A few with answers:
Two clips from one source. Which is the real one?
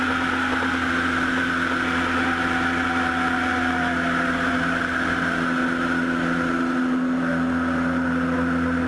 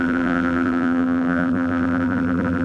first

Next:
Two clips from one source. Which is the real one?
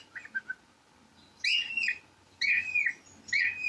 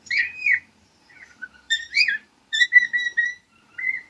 first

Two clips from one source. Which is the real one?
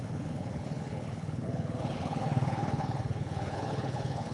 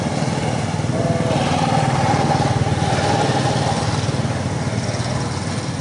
second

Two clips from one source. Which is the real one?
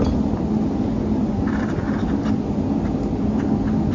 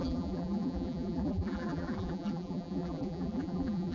first